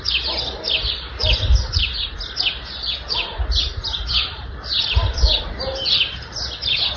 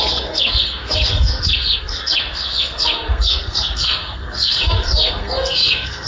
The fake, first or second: second